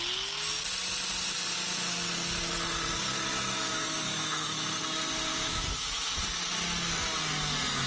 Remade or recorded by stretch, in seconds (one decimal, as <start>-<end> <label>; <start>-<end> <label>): 0.0-3.7 recorded; 3.7-4.7 remade; 4.7-5.3 recorded; 5.3-6.1 remade; 6.1-7.9 recorded